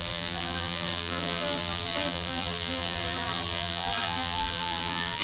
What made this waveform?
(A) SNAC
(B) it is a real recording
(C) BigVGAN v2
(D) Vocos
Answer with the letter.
C